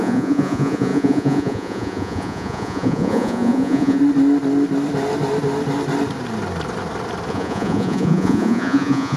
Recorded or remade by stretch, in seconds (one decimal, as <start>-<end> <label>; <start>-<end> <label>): 0.0-4.0 remade; 4.0-7.3 recorded; 7.3-9.2 remade